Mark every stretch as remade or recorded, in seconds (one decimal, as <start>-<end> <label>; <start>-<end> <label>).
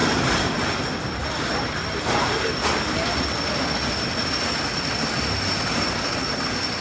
0.0-6.8 recorded